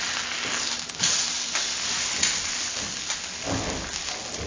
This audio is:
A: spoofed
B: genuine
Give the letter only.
B